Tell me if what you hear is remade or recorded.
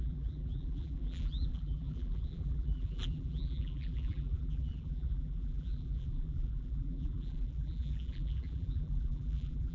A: remade